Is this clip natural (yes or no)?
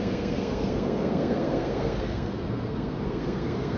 no